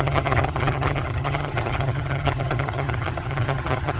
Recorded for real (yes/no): no